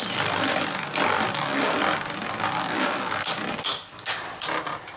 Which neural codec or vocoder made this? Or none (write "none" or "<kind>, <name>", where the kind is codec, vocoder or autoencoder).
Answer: vocoder, BigVGAN v2